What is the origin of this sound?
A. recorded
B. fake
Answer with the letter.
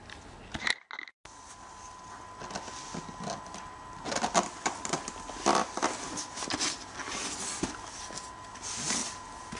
A